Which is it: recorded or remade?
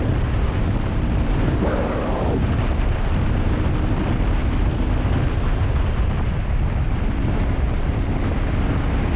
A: recorded